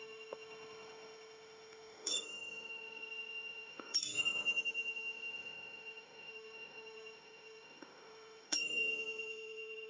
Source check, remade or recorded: remade